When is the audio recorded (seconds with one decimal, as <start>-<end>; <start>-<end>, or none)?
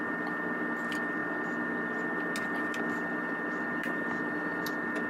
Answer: 0.0-5.1